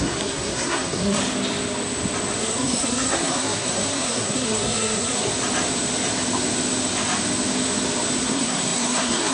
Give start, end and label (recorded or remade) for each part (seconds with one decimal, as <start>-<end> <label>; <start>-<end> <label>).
0.0-1.2 remade; 1.2-2.4 recorded; 2.4-5.3 remade; 5.3-8.2 recorded; 8.2-9.3 remade